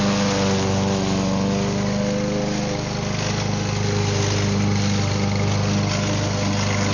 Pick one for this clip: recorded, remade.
recorded